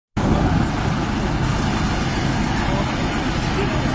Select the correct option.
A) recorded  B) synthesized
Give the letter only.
A